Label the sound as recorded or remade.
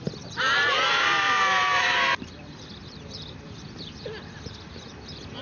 remade